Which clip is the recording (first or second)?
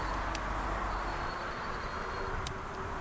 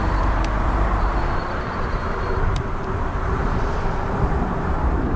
first